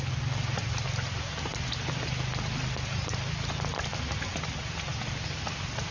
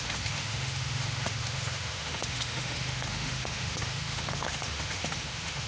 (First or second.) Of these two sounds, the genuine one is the first